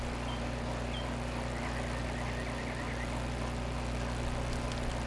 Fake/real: real